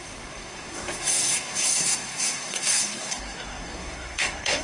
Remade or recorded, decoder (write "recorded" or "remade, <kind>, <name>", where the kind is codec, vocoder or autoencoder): remade, codec, SNAC